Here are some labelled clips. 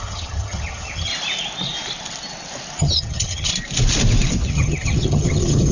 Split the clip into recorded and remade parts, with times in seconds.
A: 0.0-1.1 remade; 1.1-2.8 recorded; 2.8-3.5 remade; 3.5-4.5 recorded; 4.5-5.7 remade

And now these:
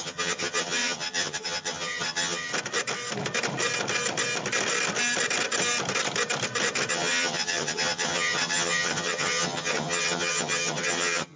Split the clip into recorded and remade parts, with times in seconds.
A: 0.0-2.5 remade; 2.5-6.9 recorded; 6.9-11.4 remade

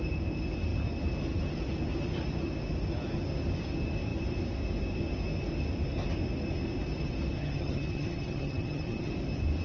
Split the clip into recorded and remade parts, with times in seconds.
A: 0.0-7.4 recorded; 7.4-9.1 remade; 9.1-9.6 recorded

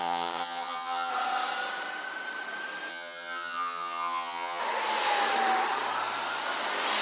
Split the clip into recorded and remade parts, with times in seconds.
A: 0.0-1.1 remade; 1.1-2.9 recorded; 2.9-4.6 remade; 4.6-7.0 recorded

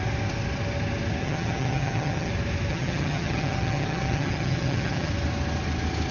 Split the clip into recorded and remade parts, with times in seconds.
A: 0.0-1.2 recorded; 1.2-2.3 remade; 2.3-2.7 recorded; 2.7-5.1 remade; 5.1-6.1 recorded

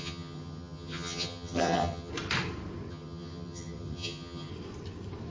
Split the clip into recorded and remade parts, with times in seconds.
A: 0.0-2.1 remade; 2.1-2.9 recorded; 2.9-4.5 remade; 4.5-5.3 recorded

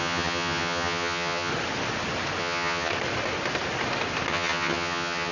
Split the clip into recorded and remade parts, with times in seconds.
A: 0.0-1.5 remade; 1.5-2.4 recorded; 2.4-2.9 remade; 2.9-4.3 recorded; 4.3-5.3 remade